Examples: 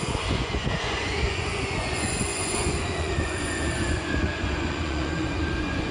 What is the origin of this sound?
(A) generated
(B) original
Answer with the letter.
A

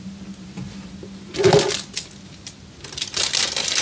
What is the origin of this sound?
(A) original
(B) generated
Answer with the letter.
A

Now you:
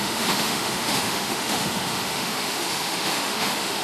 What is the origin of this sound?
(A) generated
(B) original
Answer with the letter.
A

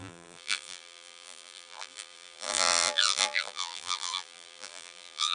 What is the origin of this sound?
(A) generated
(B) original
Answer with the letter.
A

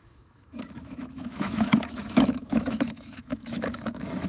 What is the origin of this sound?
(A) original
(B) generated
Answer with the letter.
B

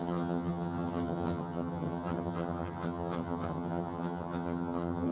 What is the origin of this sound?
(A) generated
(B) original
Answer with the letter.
A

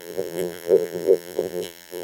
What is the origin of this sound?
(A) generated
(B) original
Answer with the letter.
A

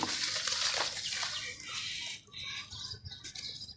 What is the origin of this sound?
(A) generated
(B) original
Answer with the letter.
B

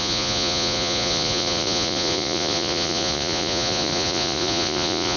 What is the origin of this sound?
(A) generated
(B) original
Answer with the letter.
A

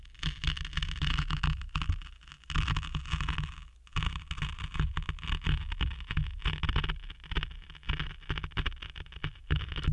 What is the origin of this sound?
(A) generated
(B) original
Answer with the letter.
B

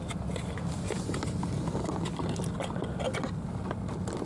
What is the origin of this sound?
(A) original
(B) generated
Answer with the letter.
A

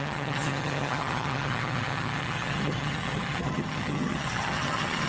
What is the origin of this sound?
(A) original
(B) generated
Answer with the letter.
B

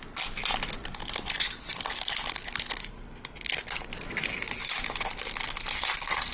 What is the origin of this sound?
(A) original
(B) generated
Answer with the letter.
A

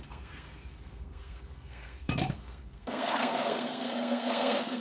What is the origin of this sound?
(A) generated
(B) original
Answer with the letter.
A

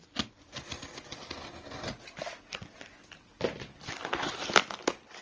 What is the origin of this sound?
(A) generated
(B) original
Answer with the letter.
B